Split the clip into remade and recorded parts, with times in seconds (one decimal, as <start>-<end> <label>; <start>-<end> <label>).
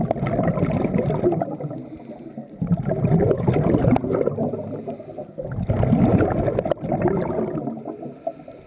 0.0-8.7 recorded